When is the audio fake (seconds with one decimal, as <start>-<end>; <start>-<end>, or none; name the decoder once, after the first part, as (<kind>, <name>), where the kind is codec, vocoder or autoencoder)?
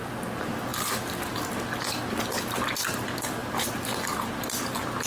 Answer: none